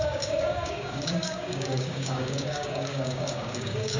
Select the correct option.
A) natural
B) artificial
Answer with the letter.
B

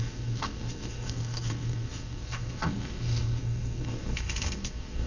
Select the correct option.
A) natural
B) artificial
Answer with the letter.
B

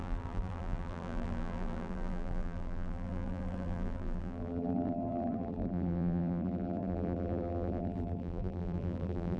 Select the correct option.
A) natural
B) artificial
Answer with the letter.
B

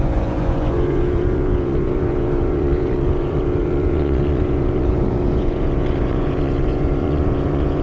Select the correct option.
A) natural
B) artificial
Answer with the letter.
B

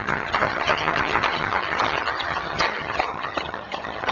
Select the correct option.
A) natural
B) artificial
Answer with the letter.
B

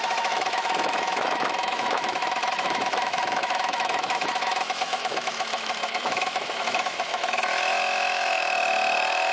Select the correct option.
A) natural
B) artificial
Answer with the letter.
B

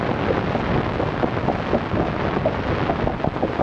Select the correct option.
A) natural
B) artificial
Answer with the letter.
A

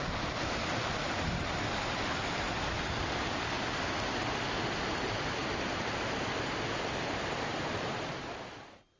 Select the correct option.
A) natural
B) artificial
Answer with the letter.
A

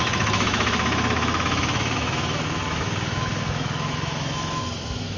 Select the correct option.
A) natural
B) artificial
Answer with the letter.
B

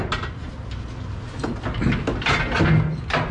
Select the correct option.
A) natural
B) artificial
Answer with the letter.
A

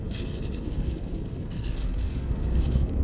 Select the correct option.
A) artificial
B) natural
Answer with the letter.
A